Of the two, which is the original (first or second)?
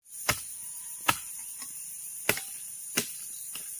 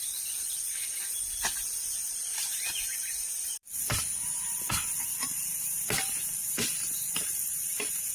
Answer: first